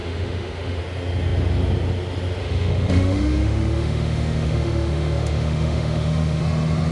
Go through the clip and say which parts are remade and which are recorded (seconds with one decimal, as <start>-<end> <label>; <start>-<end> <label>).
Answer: 0.0-0.8 remade; 0.8-2.4 recorded; 2.4-6.4 remade; 6.4-6.9 recorded